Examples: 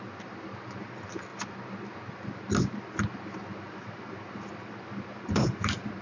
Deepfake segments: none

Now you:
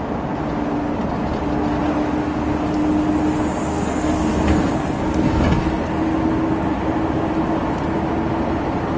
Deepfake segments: 3.7-5.8

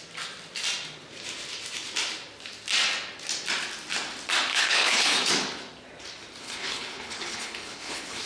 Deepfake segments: 4.5-5.3; 6.4-8.3

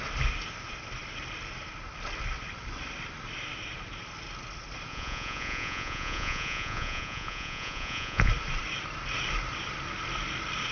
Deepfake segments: 4.9-8.3

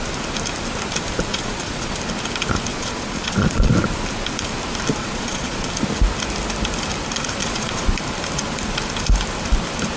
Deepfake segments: 1.3-1.9; 2.7-3.7; 5.0-5.7; 7.4-7.9

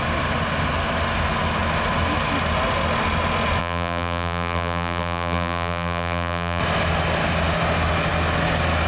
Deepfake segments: 3.6-6.6

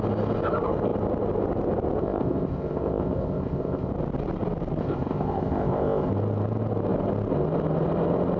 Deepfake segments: 2.0-3.9; 4.8-6.1

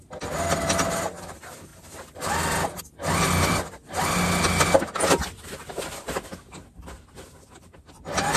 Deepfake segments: none